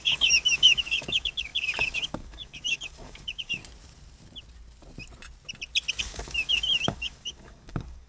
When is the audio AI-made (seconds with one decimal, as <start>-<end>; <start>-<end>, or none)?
0.0-3.6; 6.0-8.1